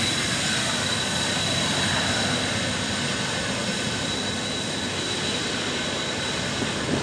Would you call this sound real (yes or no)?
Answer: yes